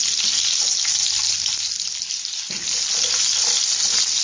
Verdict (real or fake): real